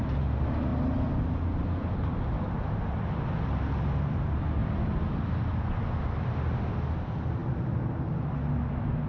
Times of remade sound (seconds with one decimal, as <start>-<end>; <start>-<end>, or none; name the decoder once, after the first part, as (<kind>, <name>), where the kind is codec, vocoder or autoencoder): none